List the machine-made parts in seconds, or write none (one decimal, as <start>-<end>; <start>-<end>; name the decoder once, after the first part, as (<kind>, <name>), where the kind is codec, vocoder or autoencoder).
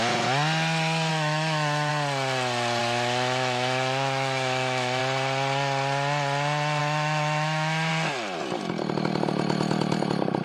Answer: 1.1-1.9 (autoencoder, DAC-VAE); 2.8-5.0; 6.8-7.9